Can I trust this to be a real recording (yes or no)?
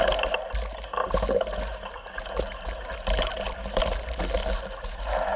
no